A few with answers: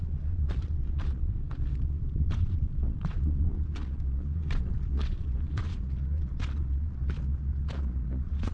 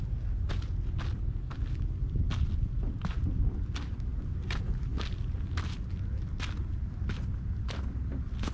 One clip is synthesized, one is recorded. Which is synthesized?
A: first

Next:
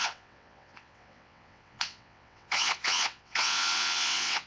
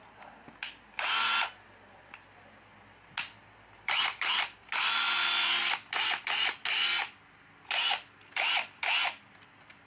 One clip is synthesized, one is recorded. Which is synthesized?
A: first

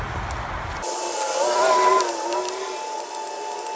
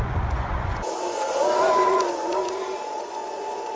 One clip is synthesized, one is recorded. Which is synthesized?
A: second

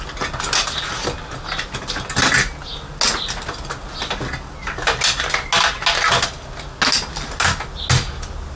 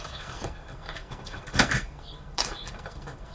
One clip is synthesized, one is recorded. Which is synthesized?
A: second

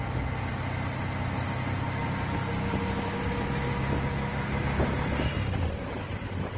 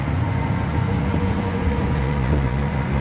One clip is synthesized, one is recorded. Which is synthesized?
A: second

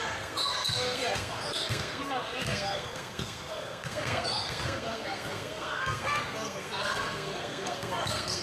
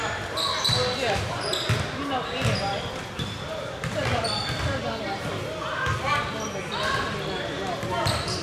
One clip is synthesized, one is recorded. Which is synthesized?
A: first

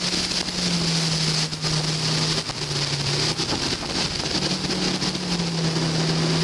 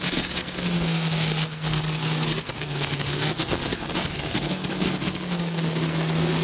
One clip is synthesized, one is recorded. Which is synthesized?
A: second